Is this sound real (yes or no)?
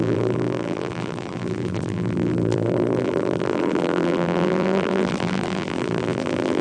no